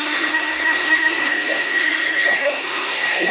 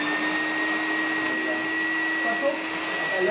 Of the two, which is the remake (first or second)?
first